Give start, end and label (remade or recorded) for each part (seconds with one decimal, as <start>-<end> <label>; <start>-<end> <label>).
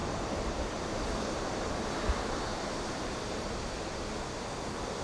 0.0-1.7 remade; 1.7-2.5 recorded; 2.5-4.1 remade; 4.1-5.0 recorded